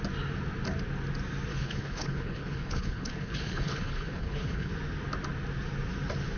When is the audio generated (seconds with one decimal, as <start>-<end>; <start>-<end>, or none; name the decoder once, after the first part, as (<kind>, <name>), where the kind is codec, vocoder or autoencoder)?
1.5-4.7 (codec, HILCodec)